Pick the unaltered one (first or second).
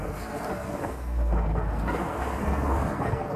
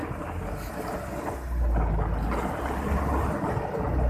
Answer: second